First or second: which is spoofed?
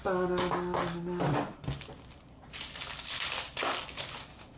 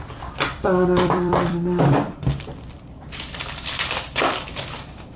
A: second